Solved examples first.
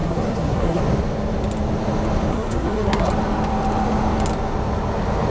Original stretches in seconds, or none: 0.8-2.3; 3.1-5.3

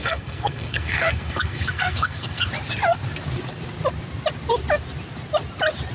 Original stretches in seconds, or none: 2.5-5.9

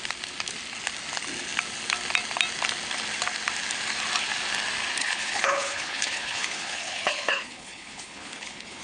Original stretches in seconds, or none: 0.0-5.0

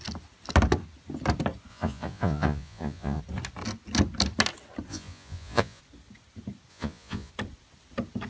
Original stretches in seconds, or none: 0.0-1.7; 3.2-4.9; 5.8-6.7; 7.3-8.3

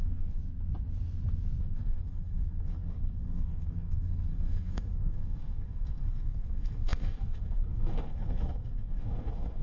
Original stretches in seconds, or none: 0.4-1.6